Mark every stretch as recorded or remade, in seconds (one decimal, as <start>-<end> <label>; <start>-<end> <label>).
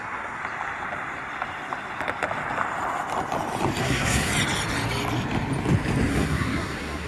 0.0-0.4 remade; 0.4-3.8 recorded; 3.8-4.3 remade; 4.3-6.1 recorded; 6.1-7.1 remade